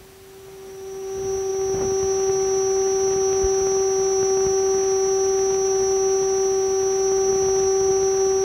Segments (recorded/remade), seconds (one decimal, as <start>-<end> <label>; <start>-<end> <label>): 0.0-8.4 recorded